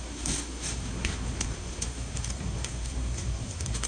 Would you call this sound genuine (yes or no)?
no